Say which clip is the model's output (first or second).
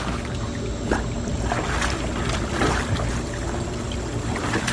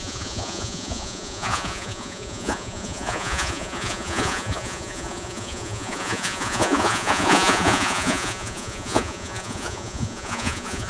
second